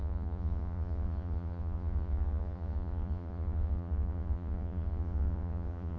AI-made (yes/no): yes